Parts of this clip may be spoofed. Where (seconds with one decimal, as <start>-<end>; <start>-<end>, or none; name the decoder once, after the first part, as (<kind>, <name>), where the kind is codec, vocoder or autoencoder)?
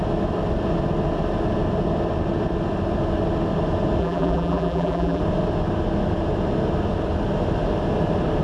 4.0-5.2 (vocoder, BigVGAN v2)